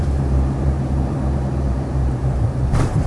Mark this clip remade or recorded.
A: remade